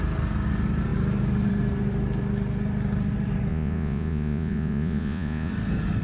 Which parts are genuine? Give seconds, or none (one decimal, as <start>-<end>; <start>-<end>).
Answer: 0.0-3.5; 5.5-6.0